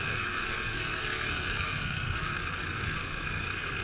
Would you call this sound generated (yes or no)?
yes